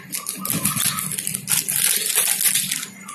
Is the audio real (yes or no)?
yes